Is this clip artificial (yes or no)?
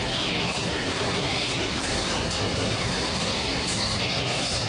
yes